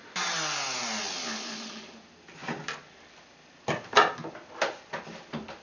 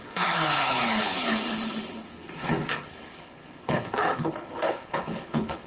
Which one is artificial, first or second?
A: second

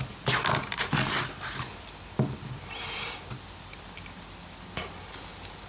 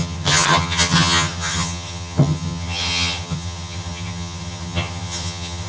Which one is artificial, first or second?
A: second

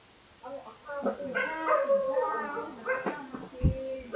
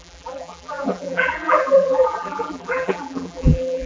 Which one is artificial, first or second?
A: second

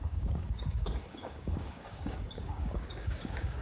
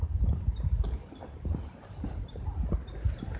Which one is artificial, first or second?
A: first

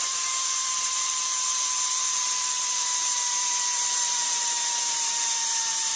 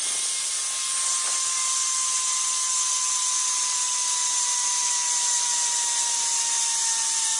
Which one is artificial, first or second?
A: first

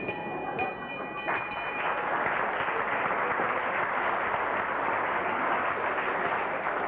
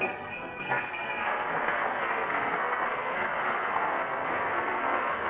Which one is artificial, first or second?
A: second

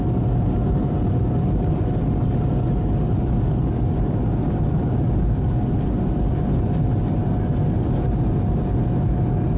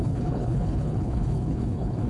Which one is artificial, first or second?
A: second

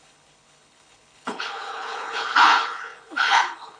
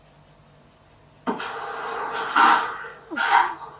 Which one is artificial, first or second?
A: first